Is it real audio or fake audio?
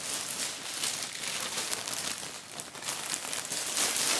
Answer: real